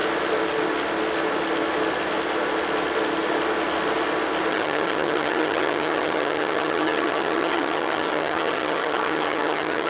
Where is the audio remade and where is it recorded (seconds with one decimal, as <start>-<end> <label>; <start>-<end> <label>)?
0.0-4.5 recorded; 4.5-9.9 remade